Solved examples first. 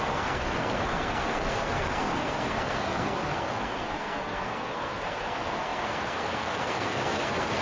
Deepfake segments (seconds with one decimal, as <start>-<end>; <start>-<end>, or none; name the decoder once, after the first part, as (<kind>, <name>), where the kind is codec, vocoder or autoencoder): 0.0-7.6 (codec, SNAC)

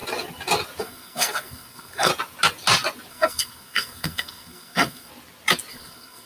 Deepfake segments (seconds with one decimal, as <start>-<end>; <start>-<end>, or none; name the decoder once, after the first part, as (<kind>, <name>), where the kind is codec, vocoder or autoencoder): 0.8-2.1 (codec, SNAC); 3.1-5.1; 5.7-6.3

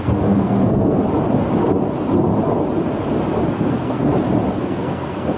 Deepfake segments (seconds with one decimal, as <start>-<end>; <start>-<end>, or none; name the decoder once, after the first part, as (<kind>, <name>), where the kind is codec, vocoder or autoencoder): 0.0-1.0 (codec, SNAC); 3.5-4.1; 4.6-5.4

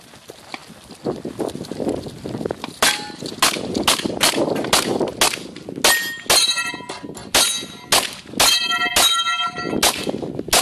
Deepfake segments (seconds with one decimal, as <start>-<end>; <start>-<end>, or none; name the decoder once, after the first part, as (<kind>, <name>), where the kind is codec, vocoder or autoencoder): none

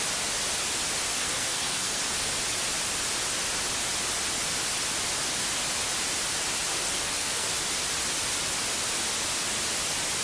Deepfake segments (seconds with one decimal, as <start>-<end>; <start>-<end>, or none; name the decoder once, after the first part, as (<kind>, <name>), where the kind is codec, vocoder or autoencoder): 1.1-2.0 (codec, SNAC); 6.7-7.5